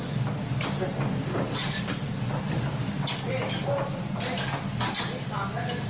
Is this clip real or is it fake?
real